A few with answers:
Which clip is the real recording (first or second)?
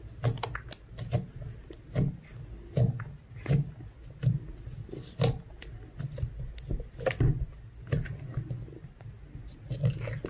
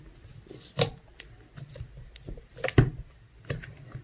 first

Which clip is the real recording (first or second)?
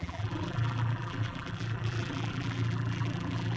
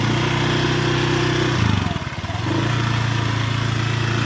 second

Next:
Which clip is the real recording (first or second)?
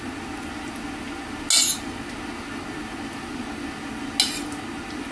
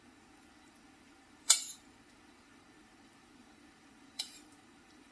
first